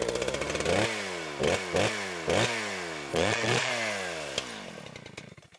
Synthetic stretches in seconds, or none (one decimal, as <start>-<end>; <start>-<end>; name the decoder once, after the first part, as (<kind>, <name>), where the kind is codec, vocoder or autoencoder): 3.1-3.7 (vocoder, Vocos)